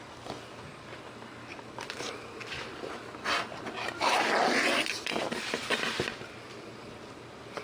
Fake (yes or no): no